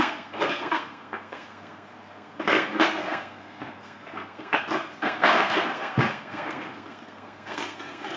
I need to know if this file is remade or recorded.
remade